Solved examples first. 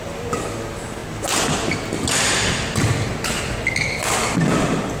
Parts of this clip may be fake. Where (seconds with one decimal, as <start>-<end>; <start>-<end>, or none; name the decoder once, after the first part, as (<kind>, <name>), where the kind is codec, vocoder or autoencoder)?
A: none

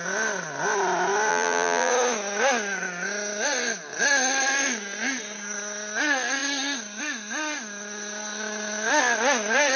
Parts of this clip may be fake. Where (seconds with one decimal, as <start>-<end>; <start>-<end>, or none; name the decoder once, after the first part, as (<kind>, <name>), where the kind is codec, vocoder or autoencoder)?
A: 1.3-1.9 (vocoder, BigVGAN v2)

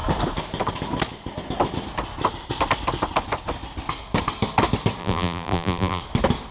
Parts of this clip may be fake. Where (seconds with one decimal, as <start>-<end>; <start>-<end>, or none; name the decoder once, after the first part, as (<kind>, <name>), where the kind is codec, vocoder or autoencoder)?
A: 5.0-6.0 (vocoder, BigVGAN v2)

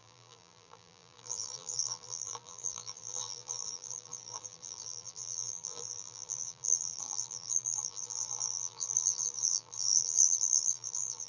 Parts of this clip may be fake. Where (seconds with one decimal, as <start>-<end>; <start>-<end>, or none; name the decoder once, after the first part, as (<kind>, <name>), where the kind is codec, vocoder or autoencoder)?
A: 0.0-11.3 (vocoder, BigVGAN v2)